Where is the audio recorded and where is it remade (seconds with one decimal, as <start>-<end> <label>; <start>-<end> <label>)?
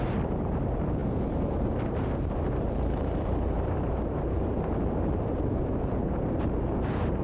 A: 0.0-7.2 remade